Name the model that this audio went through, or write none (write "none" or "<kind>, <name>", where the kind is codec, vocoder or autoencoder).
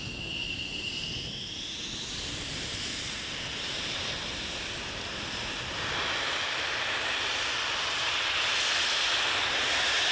none